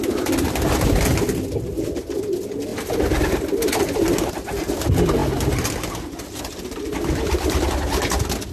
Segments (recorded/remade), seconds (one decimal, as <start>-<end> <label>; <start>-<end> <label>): 0.0-8.5 recorded